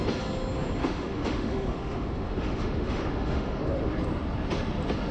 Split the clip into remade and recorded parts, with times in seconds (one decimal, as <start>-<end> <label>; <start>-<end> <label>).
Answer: 0.0-0.8 recorded; 0.8-3.9 remade; 3.9-5.1 recorded